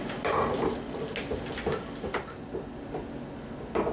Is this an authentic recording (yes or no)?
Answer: yes